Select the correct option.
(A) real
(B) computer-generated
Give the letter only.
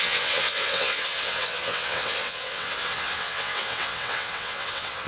B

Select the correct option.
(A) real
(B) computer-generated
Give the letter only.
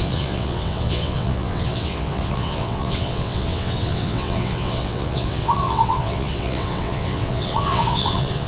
B